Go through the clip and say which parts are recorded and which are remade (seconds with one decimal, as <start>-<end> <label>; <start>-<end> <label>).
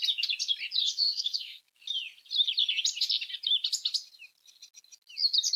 0.0-0.8 recorded; 0.8-1.6 remade; 1.6-5.6 recorded